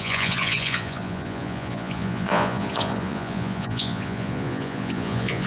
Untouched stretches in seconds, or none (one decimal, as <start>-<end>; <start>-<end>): none

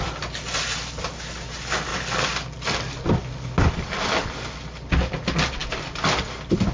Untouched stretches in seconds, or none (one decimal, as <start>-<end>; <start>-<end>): 0.0-6.7

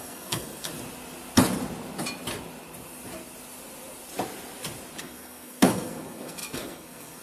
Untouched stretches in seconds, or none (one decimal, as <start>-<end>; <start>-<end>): 0.7-5.0